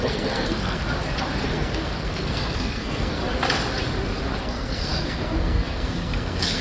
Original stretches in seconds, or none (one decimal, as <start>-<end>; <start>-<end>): 0.8-1.4; 3.2-4.4